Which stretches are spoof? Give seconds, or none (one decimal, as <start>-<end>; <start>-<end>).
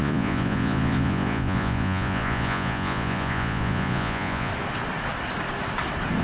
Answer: 0.0-4.5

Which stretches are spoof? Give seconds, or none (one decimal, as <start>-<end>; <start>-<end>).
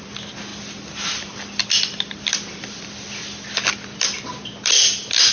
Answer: none